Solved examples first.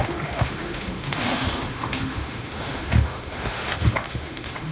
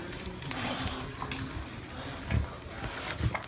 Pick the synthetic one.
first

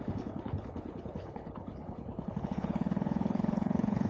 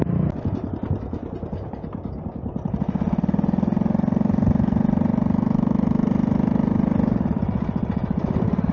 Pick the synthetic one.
first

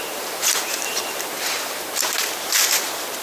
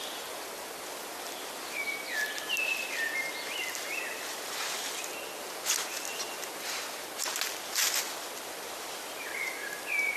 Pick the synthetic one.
first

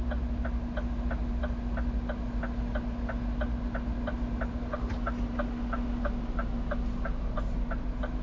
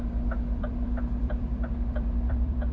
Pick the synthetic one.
second